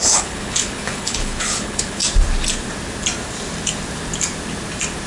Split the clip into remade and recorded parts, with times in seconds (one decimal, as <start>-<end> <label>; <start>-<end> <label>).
0.0-2.0 remade; 2.0-5.1 recorded